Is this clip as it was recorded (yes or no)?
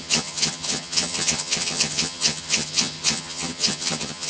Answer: no